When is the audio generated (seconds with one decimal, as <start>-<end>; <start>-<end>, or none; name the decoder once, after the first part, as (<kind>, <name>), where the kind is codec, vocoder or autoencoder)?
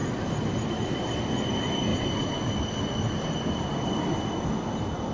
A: none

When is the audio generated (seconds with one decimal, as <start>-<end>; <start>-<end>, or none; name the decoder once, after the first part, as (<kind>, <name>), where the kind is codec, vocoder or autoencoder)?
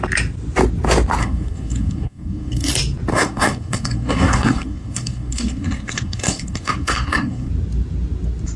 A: 1.2-2.7 (codec, SNAC); 3.1-7.5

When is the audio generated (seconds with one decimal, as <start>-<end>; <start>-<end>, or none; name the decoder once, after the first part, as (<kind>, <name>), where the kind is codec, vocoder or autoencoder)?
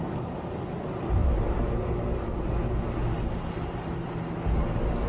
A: none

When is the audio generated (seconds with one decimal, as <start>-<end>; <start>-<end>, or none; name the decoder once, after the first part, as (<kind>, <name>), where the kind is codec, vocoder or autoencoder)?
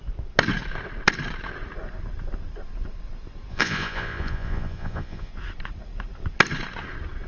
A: 3.5-5.3 (vocoder, Vocos)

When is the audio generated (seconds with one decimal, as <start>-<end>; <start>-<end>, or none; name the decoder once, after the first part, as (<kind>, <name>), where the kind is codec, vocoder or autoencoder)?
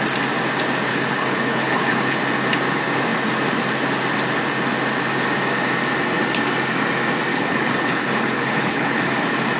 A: 0.9-2.2 (codec, HILCodec); 7.3-9.1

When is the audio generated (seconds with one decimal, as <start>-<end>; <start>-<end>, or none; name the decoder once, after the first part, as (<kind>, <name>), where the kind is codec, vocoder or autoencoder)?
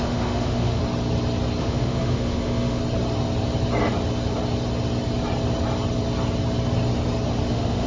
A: 0.0-0.8 (autoencoder, DAC-VAE); 1.6-2.8; 7.5-7.9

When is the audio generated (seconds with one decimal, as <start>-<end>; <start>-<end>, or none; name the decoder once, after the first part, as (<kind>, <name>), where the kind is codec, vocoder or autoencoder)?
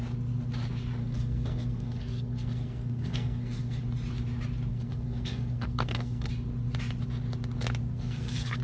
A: 1.0-3.8 (codec, SNAC); 4.7-6.3; 7.8-8.6